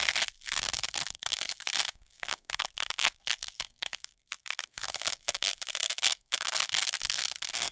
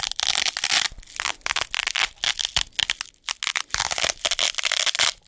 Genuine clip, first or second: second